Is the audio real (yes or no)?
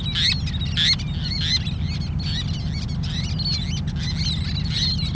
yes